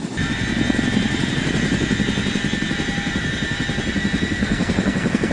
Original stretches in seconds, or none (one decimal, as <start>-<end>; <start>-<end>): 0.0-4.4